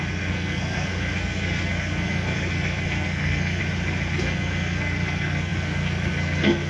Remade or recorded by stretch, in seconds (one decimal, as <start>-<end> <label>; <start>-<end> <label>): 0.0-3.6 remade; 3.6-4.1 recorded; 4.1-6.7 remade